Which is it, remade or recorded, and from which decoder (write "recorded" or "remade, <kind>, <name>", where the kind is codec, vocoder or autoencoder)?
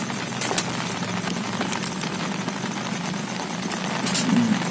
recorded